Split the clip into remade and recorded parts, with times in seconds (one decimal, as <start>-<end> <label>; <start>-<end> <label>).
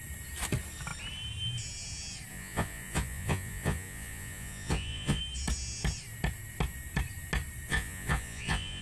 0.0-2.3 recorded; 2.3-5.2 remade; 5.2-7.7 recorded; 7.7-8.8 remade